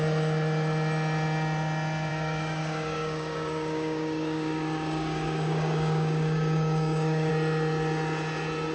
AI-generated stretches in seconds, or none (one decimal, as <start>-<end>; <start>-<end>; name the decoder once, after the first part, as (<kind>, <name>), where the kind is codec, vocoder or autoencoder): 2.1-7.3 (codec, DAC)